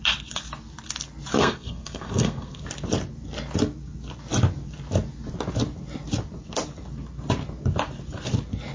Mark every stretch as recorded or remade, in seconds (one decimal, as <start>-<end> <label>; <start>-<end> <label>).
0.0-1.4 recorded; 1.4-2.6 remade; 2.6-8.7 recorded